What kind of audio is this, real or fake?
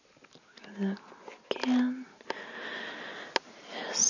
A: real